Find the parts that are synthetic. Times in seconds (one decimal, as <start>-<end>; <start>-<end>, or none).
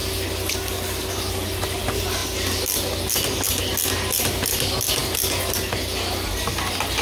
none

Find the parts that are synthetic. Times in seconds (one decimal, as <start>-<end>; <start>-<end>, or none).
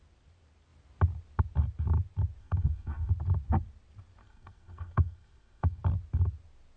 2.4-3.1; 4.2-5.8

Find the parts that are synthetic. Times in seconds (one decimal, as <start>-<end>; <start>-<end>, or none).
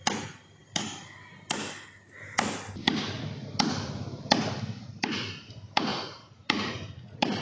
5.9-7.4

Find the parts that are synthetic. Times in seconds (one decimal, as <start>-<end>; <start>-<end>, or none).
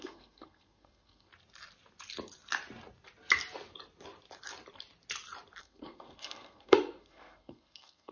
0.0-1.3; 5.6-8.1